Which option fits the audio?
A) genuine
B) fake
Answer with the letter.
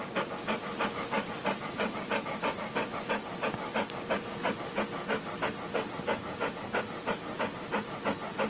A